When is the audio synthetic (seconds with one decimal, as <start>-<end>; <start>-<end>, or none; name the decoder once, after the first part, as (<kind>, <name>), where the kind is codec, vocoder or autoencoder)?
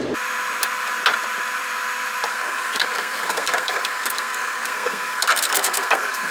2.3-6.3 (codec, SNAC)